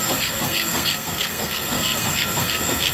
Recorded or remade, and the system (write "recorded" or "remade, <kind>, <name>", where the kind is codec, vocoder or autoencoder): remade, codec, SNAC